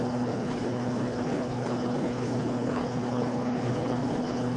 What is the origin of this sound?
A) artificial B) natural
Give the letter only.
A